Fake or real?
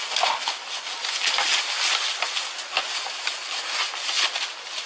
real